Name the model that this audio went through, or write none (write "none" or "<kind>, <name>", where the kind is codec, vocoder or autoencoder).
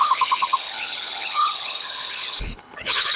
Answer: codec, HILCodec